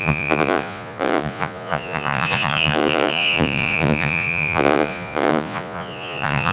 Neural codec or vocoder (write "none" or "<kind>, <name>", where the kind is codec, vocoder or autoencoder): vocoder, Vocos